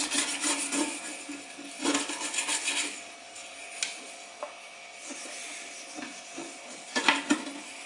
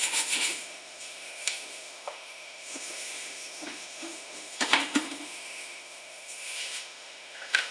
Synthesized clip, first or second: second